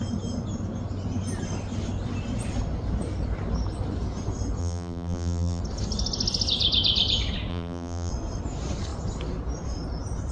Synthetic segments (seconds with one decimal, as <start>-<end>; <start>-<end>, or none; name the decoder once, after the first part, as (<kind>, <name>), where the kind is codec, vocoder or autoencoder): 4.6-5.6 (vocoder, BigVGAN v2); 7.5-8.1